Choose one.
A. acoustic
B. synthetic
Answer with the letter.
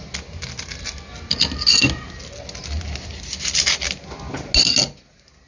A